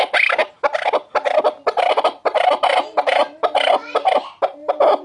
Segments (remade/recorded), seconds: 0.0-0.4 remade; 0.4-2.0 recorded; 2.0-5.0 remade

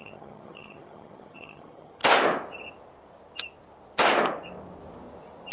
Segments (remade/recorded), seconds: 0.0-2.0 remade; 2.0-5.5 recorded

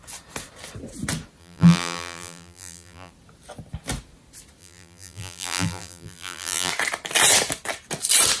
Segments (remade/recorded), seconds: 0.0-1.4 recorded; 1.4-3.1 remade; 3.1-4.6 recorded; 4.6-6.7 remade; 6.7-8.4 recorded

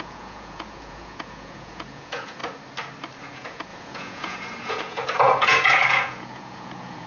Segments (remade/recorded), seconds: 0.0-2.4 remade; 2.4-3.2 recorded; 3.2-7.1 remade

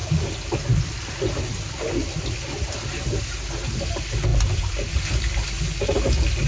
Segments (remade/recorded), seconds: 0.0-6.5 recorded